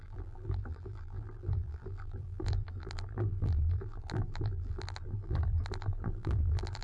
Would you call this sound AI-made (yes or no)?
yes